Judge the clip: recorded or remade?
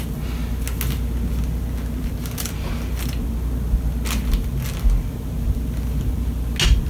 recorded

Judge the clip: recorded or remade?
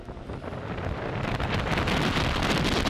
recorded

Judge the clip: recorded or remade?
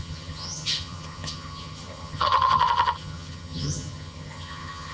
remade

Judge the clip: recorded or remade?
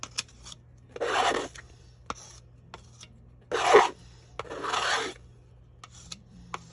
recorded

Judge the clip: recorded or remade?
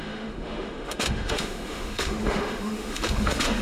remade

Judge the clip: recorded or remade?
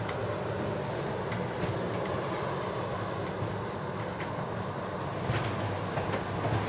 recorded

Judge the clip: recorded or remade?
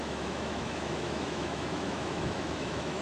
remade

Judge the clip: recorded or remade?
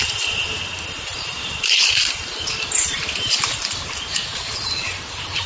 recorded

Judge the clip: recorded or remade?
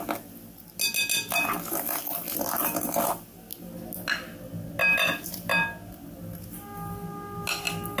recorded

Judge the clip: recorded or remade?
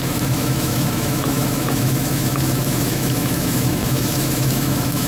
remade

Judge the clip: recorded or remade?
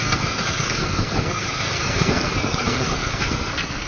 remade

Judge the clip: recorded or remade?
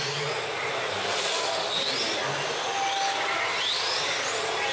recorded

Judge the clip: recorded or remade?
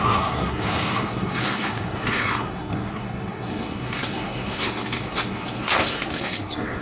remade